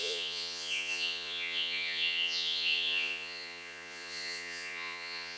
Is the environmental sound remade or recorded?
remade